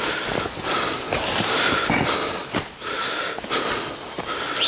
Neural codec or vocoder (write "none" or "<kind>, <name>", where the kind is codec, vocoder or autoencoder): none